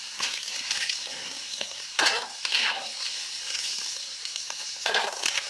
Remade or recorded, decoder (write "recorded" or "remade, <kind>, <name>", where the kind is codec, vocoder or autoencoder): remade, codec, SNAC